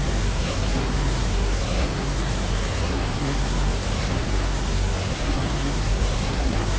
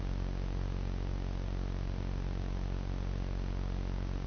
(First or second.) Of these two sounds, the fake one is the first